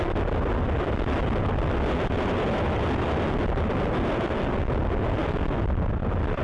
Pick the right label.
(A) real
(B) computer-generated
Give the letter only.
A